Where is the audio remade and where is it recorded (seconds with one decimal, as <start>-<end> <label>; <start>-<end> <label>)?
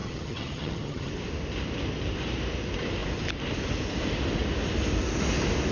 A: 0.0-1.1 remade; 1.1-5.7 recorded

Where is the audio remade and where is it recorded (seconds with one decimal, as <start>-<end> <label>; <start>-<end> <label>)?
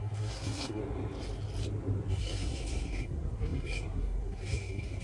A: 0.0-0.8 remade; 0.8-2.1 recorded; 2.1-5.0 remade